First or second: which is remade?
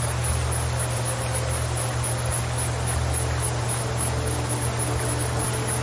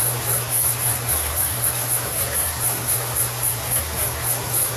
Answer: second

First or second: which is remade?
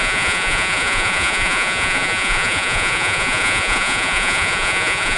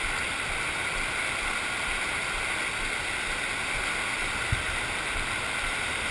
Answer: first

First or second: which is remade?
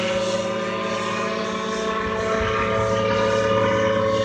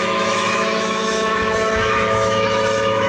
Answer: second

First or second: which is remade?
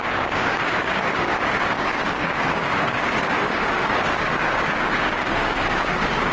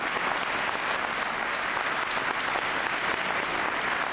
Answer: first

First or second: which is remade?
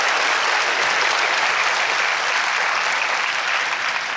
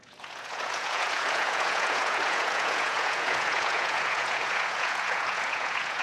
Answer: second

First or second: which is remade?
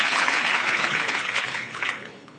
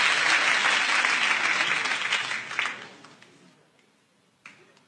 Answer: first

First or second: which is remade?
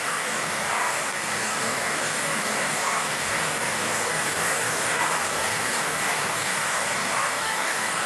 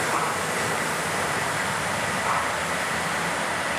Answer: first